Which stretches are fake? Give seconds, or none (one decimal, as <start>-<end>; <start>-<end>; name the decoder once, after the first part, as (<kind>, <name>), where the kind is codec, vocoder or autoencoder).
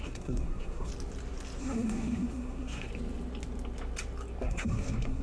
0.0-0.9 (codec, SNAC); 1.6-2.9; 4.4-5.2